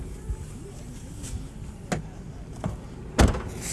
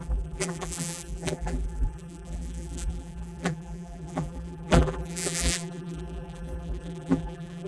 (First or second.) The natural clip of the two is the first